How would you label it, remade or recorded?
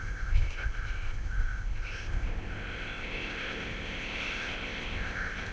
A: remade